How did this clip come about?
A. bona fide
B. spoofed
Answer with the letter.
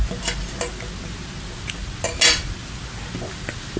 A